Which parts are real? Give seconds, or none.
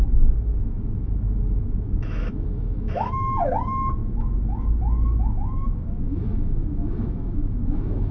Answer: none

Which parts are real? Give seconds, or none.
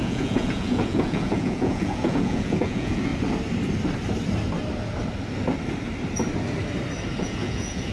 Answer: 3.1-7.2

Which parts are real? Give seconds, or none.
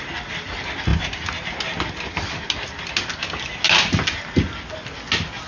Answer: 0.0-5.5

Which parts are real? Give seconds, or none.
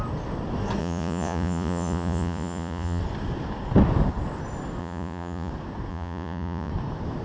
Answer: 0.0-0.8; 3.0-4.8; 5.5-5.9; 6.7-7.2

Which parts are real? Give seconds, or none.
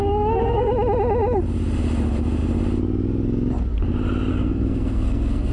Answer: 0.7-4.3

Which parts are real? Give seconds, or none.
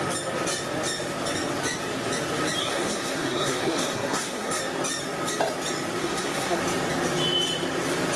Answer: 0.0-2.6; 4.6-6.0; 6.6-8.2